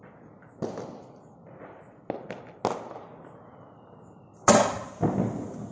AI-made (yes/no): no